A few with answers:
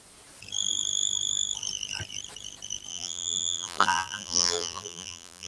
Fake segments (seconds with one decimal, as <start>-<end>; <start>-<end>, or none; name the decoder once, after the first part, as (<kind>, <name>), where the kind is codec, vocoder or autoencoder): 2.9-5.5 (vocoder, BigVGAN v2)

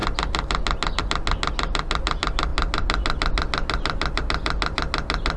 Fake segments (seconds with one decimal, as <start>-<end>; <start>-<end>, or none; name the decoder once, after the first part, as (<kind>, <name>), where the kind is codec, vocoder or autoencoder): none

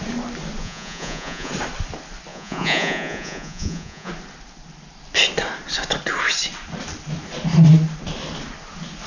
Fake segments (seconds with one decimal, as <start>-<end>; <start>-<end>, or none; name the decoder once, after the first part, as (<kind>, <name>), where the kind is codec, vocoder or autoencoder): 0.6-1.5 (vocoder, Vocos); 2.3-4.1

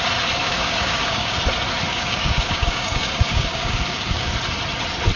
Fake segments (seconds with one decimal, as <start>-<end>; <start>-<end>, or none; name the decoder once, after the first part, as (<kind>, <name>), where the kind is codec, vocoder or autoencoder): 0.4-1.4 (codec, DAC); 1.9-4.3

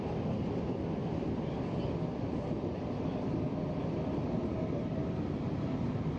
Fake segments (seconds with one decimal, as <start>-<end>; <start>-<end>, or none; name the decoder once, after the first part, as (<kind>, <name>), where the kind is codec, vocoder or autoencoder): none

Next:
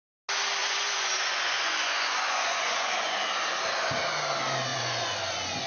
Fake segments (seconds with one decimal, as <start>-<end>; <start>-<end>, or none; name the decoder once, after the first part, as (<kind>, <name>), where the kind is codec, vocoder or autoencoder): 0.6-3.2 (vocoder, Vocos); 4.7-5.7